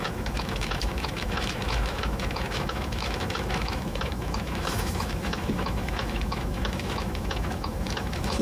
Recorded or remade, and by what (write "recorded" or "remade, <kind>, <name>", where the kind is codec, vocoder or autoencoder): remade, autoencoder, DAC-VAE